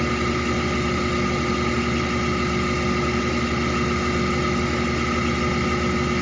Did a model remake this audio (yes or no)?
no